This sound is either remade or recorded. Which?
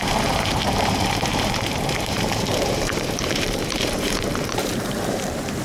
remade